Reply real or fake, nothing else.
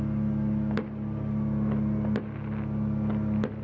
real